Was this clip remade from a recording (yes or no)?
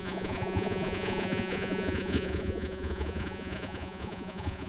yes